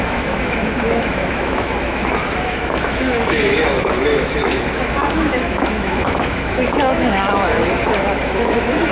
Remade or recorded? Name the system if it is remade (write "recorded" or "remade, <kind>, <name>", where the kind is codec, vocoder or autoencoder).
remade, autoencoder, DAC-VAE